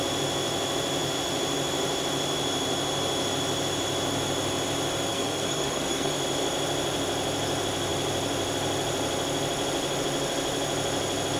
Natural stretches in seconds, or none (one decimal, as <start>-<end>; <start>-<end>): 0.0-5.1; 6.1-11.4